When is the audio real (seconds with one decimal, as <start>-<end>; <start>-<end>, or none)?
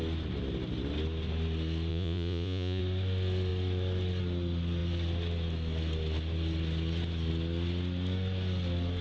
0.0-1.9; 2.8-9.0